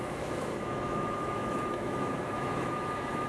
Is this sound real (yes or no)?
no